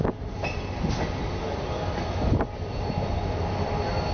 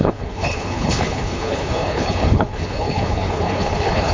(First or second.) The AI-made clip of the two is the second